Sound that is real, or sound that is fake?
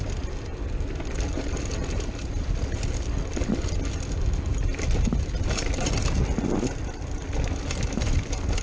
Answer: real